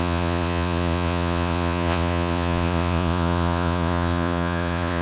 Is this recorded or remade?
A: remade